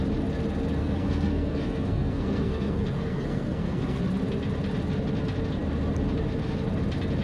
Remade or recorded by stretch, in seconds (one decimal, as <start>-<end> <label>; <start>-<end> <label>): 0.0-0.8 recorded; 0.8-4.0 remade; 4.0-7.2 recorded